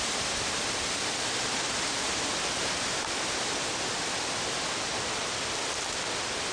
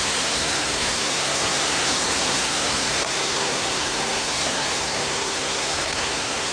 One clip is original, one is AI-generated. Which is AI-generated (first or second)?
second